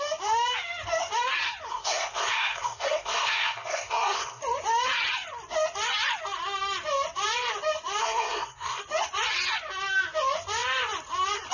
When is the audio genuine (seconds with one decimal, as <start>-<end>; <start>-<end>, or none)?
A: 0.0-1.7; 4.4-8.0; 8.8-11.5